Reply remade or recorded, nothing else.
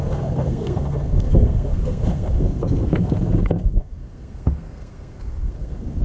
remade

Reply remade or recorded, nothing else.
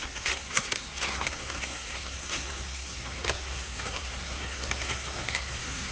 remade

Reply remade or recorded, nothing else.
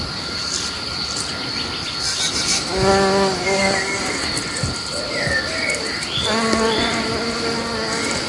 recorded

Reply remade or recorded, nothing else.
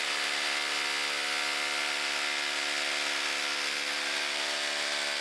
recorded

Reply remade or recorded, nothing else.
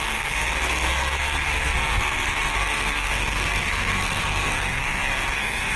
remade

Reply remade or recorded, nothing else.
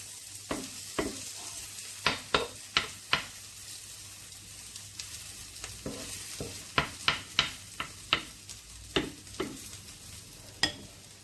recorded